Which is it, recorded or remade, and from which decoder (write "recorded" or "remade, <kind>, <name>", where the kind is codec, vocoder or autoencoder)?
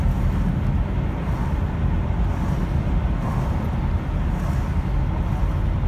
recorded